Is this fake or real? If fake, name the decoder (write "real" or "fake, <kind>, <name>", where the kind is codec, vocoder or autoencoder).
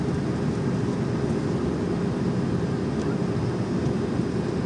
real